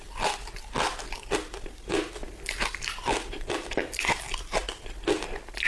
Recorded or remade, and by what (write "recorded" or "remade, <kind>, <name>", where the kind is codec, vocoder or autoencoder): recorded